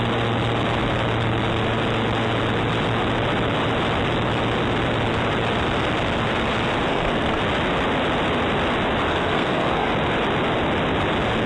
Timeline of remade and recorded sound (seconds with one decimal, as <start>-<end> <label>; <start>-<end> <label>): 0.0-6.9 recorded; 6.9-7.4 remade; 7.4-9.1 recorded; 9.1-9.9 remade; 9.9-11.5 recorded